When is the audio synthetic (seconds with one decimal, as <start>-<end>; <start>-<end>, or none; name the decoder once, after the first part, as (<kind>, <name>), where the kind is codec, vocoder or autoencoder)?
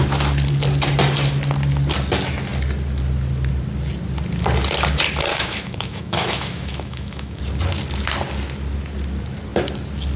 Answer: 5.3-7.4 (autoencoder, DAC-VAE)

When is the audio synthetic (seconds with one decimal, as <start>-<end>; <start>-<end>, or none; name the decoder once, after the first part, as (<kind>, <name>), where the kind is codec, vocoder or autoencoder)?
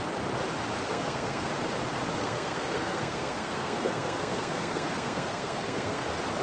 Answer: 0.9-1.5 (codec, SNAC); 2.2-6.0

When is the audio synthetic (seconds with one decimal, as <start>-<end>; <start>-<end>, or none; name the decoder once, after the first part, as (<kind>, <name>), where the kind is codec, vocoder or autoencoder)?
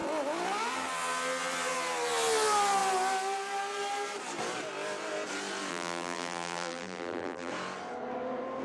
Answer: 5.7-7.5 (vocoder, BigVGAN v2)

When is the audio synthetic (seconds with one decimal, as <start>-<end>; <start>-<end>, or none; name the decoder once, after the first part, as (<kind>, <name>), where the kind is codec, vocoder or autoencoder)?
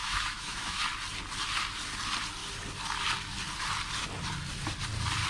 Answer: 0.0-0.9 (autoencoder, DAC-VAE)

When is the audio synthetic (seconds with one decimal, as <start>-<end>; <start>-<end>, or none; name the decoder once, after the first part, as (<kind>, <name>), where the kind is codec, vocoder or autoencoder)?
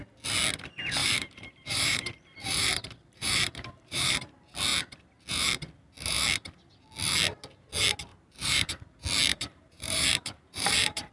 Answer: 1.0-4.2 (vocoder, BigVGAN v2); 8.1-8.8; 9.3-11.1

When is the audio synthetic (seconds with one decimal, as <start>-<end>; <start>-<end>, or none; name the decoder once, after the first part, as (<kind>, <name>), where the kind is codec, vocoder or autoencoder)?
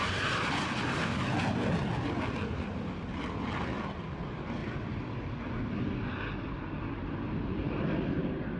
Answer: none